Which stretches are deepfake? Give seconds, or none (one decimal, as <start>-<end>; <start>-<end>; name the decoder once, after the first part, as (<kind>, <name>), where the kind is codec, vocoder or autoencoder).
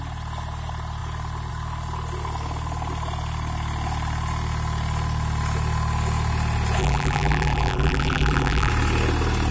6.8-8.7 (vocoder, BigVGAN v2)